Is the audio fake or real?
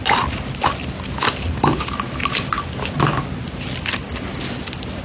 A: real